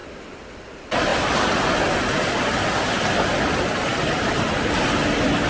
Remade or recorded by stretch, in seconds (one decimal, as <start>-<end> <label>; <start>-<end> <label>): 0.0-5.5 recorded